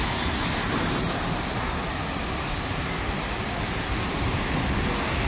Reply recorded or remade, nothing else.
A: recorded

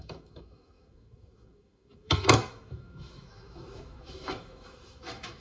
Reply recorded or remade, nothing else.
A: remade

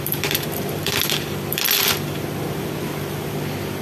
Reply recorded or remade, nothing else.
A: remade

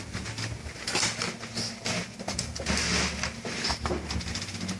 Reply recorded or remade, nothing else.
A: recorded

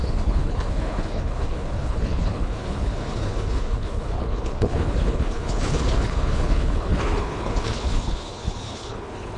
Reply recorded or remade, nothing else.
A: remade